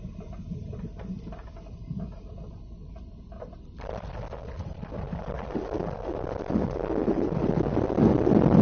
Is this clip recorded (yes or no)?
yes